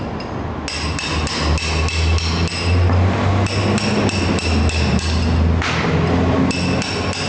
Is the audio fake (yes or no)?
no